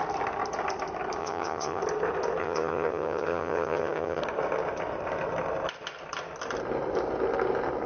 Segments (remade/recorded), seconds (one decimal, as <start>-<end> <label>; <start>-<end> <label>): 0.0-1.2 recorded; 1.2-1.8 remade; 1.8-2.4 recorded; 2.4-4.2 remade; 4.2-7.9 recorded

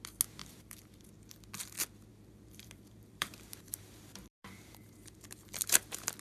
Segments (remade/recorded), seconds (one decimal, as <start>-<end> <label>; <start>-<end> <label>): 0.0-0.4 recorded; 0.4-1.1 remade; 1.1-2.1 recorded; 2.1-5.8 remade; 5.8-6.2 recorded